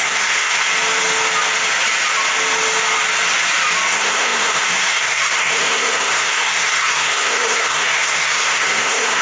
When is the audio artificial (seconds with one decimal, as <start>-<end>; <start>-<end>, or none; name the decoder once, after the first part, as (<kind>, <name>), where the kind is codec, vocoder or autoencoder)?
0.0-0.7 (codec, SNAC); 3.9-9.2